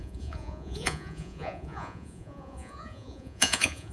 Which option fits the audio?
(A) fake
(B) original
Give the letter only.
A